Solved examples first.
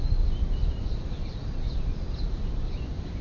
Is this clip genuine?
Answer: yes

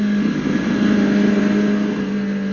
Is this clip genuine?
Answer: yes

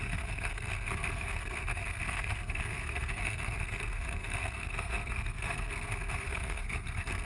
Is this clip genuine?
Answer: no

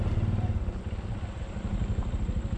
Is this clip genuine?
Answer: yes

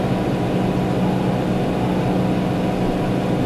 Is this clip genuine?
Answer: yes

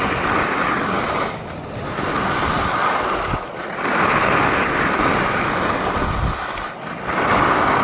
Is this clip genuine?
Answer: yes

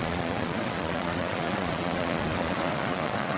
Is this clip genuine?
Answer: no